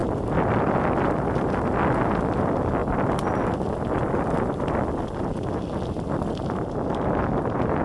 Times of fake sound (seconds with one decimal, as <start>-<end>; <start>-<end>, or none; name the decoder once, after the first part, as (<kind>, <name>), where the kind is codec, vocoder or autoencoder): none